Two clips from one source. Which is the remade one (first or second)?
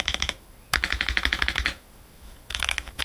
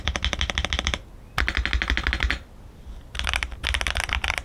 first